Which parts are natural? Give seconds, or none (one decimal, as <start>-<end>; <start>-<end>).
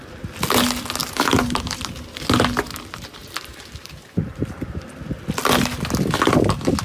0.0-1.0; 1.9-3.2; 4.3-6.8